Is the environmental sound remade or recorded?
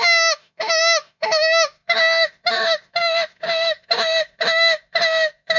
remade